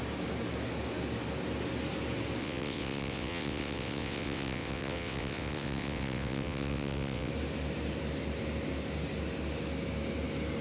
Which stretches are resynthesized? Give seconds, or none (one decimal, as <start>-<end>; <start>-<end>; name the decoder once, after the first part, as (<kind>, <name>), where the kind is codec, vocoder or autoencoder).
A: 2.4-7.3 (vocoder, WaveNeXt)